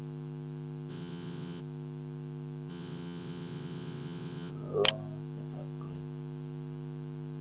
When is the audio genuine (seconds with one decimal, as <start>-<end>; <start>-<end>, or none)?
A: 0.0-0.9; 1.6-2.7; 4.5-7.4